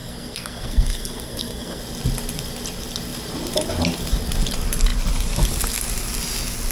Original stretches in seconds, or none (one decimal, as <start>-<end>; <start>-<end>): 1.8-6.7